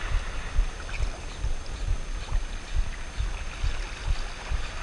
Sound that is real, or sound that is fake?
real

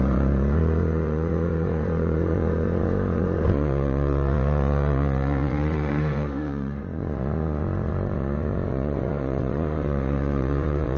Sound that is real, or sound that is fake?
fake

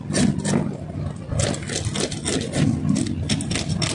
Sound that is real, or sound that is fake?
real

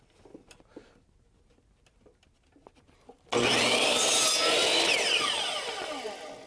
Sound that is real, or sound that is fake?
real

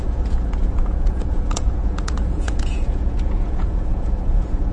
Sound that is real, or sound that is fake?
fake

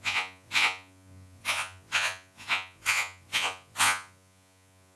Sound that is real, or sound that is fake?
fake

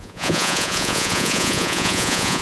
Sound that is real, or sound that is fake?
fake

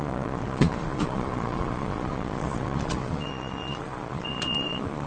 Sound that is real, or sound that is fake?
fake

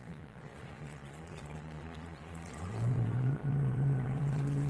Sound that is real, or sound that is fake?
fake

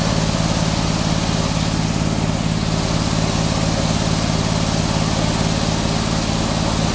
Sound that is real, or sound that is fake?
real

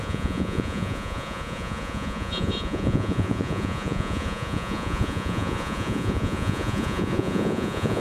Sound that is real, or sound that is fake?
fake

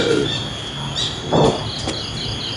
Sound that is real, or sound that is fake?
real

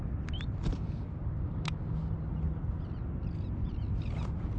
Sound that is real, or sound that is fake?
real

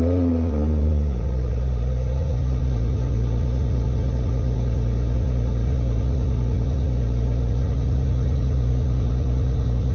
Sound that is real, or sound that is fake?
fake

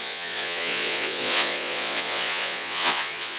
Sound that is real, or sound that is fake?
fake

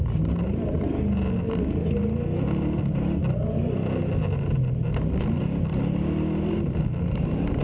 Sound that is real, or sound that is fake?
real